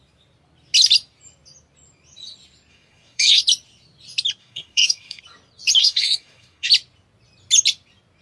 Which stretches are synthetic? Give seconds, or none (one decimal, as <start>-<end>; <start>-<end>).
2.7-3.4; 4.4-5.2; 5.8-6.7